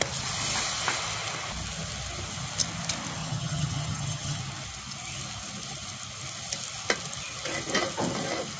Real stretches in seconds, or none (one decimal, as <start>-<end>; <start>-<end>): 0.0-3.2; 4.4-8.6